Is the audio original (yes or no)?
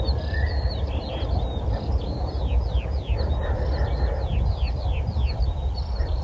yes